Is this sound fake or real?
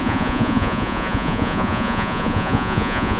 fake